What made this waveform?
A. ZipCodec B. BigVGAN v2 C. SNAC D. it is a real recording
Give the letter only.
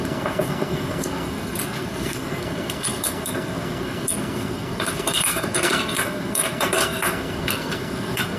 C